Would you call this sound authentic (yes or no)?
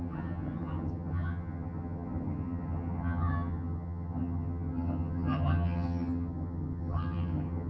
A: no